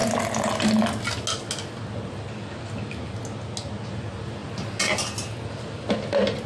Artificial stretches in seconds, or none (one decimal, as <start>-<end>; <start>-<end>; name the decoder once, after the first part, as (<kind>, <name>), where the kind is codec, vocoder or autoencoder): none